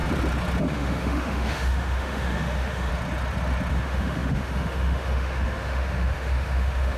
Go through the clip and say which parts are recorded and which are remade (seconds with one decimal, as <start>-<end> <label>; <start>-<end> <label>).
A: 0.0-0.6 recorded; 0.6-2.9 remade; 2.9-3.7 recorded; 3.7-7.0 remade